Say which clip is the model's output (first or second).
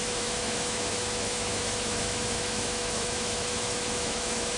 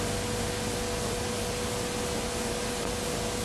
first